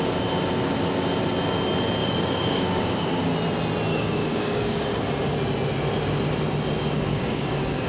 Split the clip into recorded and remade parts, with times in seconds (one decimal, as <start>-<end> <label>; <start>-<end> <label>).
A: 0.0-2.0 recorded; 2.0-3.3 remade; 3.3-3.9 recorded; 3.9-5.1 remade; 5.1-7.1 recorded; 7.1-7.9 remade